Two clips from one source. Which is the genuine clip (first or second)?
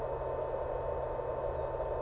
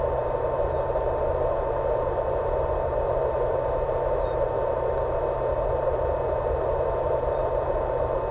first